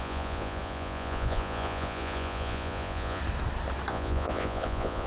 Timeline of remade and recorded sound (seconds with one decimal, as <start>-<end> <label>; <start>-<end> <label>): 0.0-3.2 remade; 3.2-3.9 recorded; 3.9-5.1 remade

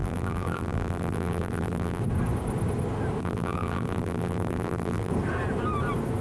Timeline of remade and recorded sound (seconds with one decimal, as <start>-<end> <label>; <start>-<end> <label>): 0.0-2.0 remade; 2.0-3.2 recorded; 3.2-5.1 remade; 5.1-6.2 recorded

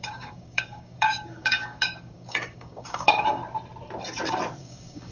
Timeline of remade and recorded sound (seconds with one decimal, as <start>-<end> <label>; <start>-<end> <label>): 0.0-3.4 remade; 3.4-4.6 recorded; 4.6-5.1 remade

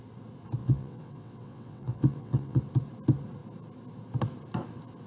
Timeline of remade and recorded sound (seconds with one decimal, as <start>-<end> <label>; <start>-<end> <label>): 0.0-0.6 recorded; 0.6-2.6 remade; 2.6-5.1 recorded

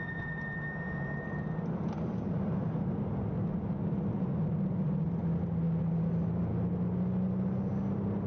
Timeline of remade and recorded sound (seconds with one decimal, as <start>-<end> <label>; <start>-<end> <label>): 0.0-8.3 recorded

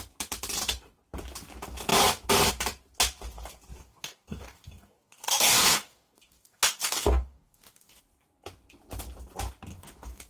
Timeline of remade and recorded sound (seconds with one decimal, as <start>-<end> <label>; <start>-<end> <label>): 0.0-3.8 recorded; 3.8-8.0 remade; 8.0-9.7 recorded; 9.7-10.3 remade